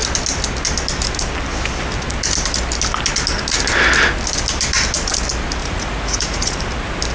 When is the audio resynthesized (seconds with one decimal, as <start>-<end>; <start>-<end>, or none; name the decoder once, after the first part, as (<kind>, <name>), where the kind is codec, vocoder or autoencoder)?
5.6-6.6 (vocoder, Vocos)